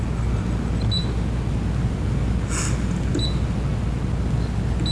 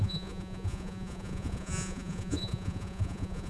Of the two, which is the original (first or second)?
first